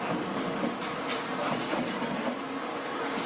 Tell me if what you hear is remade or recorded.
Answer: recorded